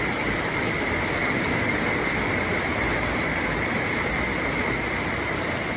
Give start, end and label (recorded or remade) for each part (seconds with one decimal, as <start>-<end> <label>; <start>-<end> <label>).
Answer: 0.0-5.8 recorded